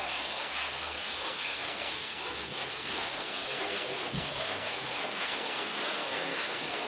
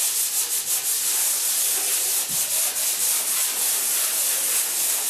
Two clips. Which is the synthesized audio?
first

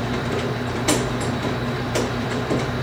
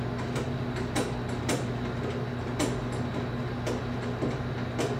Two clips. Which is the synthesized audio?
first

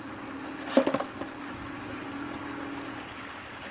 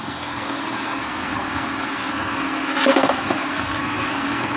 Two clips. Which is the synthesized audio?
second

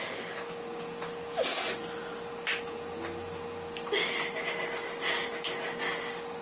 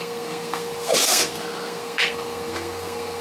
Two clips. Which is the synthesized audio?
second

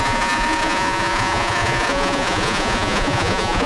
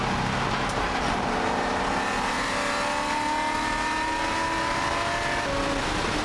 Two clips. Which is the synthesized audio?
first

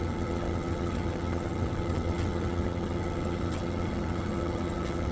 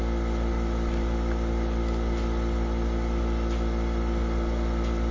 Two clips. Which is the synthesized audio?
first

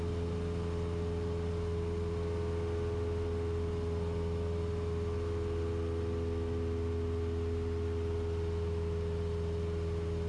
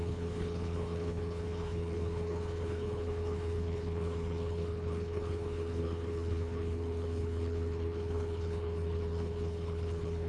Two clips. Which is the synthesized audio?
second